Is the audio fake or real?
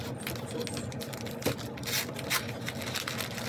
real